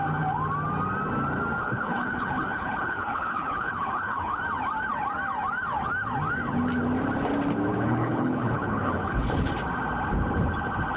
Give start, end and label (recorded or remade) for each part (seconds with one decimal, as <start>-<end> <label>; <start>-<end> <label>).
0.0-1.6 recorded; 1.6-4.4 remade; 4.4-7.7 recorded; 7.7-9.5 remade; 9.5-11.0 recorded